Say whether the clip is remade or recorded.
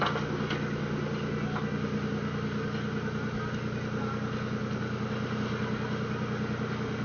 recorded